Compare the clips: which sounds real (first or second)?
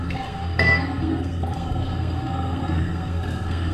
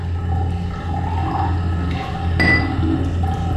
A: second